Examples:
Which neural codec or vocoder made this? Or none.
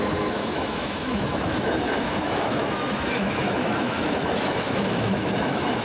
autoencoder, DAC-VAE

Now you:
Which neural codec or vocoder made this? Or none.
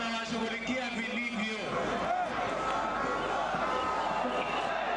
none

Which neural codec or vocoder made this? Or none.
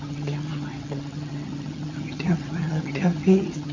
vocoder, HiFi-GAN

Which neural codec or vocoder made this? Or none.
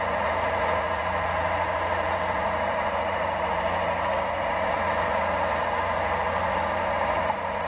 vocoder, Vocos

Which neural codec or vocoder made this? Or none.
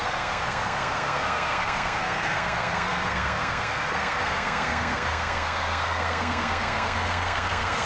codec, SNAC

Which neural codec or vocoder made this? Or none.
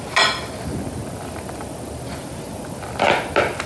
none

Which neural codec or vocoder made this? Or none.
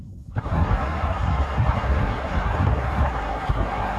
codec, SNAC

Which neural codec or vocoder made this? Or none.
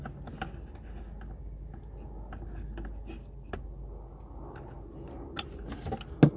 none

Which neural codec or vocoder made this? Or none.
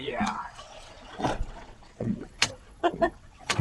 vocoder, WaveNeXt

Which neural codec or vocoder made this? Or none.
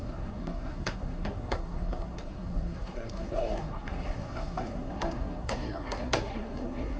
codec, SNAC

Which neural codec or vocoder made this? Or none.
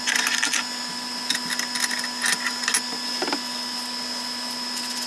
none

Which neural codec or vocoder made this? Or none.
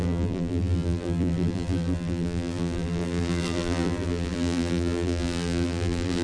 vocoder, BigVGAN v2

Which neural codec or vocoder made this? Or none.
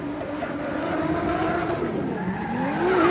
none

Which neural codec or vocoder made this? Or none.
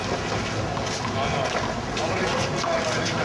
none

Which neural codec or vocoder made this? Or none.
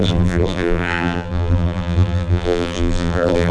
vocoder, BigVGAN v2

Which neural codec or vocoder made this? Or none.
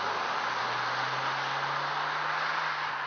none